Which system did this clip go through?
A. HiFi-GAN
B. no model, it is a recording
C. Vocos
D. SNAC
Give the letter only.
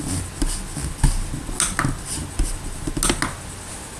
B